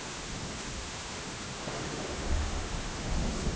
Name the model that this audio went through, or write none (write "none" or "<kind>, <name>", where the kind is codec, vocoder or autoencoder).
autoencoder, DAC-VAE